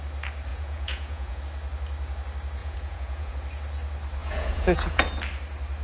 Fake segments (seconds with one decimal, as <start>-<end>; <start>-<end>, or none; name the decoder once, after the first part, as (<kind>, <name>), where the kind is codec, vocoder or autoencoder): 0.5-1.4 (vocoder, Vocos); 2.6-3.3; 4.2-5.1